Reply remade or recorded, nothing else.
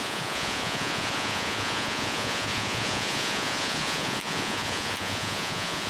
remade